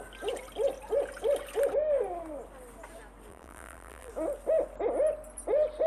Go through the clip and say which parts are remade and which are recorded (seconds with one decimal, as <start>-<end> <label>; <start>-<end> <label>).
0.0-3.3 recorded; 3.3-4.1 remade; 4.1-5.9 recorded